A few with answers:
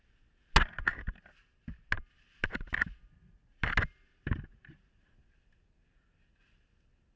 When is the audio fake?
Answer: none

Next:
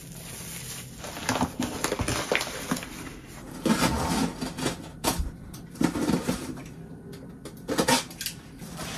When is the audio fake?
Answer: 4.9-7.0 (vocoder, BigVGAN v2)

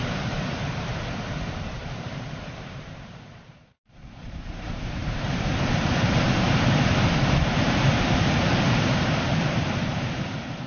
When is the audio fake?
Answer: 0.0-7.8 (vocoder, BigVGAN v2); 8.9-10.7